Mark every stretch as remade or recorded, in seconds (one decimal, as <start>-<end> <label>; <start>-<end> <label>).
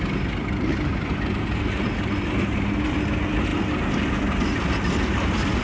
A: 0.0-5.6 recorded